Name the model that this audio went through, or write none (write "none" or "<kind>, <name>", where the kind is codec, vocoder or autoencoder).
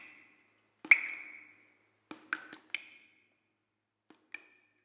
none